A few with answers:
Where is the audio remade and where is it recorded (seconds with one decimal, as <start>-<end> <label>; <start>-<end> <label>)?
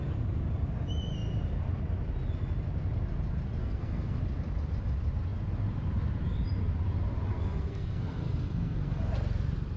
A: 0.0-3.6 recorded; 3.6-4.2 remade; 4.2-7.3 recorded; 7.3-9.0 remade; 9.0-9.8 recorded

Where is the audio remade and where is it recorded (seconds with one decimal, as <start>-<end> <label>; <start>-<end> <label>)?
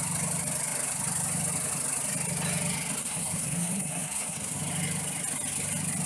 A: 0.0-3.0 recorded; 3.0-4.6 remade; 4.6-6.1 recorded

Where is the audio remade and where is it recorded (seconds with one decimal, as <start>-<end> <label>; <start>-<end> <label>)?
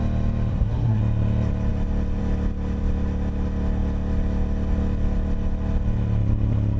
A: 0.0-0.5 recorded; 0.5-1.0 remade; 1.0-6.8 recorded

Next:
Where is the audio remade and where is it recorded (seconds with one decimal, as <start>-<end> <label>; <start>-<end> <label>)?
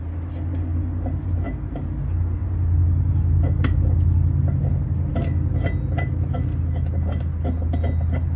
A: 0.0-8.4 recorded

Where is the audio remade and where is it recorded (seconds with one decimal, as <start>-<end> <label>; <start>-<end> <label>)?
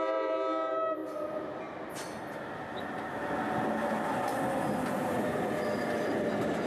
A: 0.0-6.7 recorded